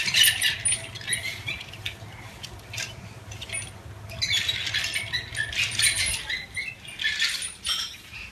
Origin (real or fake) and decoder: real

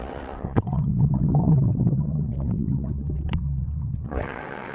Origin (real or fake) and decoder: fake, vocoder, WaveNeXt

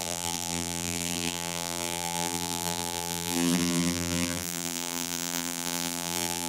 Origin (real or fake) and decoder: fake, vocoder, BigVGAN v2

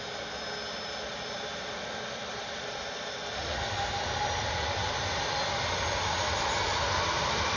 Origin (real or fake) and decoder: real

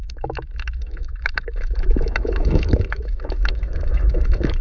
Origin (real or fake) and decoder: fake, autoencoder, DAC-VAE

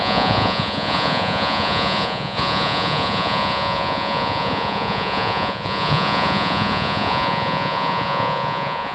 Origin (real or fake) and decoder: fake, vocoder, Vocos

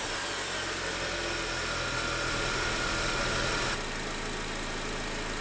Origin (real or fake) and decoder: real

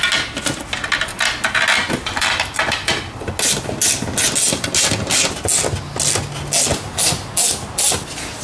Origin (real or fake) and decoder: real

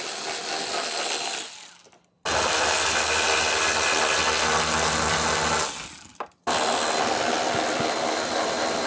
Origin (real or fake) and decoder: real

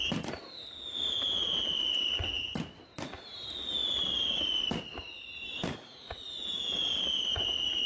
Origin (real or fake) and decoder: real